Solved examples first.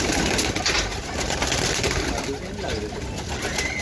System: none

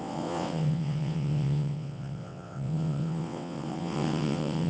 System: vocoder, WaveNeXt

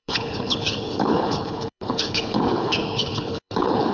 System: codec, HILCodec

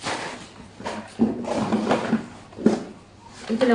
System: none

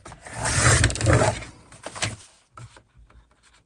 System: none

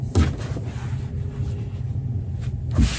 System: none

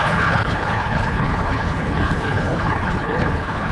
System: codec, HILCodec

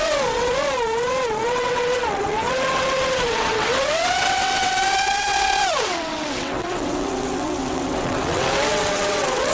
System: vocoder, WaveNeXt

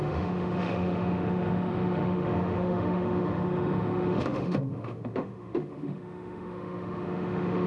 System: autoencoder, DAC-VAE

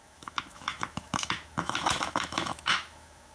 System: autoencoder, DAC-VAE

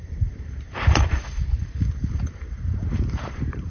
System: vocoder, BigVGAN v2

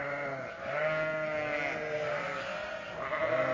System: none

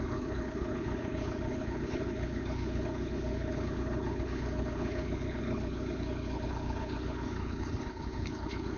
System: codec, HILCodec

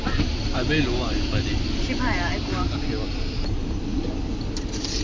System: none